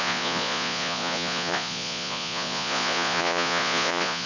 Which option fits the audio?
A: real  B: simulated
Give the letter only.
B